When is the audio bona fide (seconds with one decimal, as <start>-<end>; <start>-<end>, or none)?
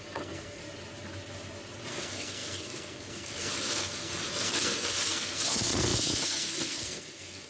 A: 0.6-1.9